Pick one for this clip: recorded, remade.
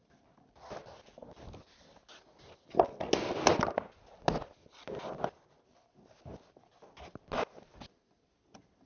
recorded